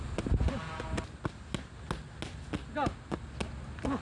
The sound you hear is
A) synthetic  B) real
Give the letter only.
B